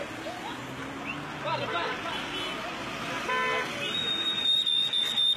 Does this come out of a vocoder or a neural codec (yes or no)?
no